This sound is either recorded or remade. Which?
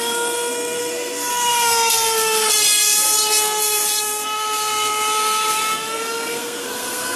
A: remade